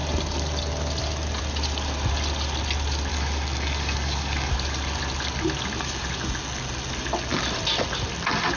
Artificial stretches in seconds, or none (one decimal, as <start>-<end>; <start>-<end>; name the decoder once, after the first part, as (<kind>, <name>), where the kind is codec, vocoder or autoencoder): 3.1-4.5 (codec, DAC)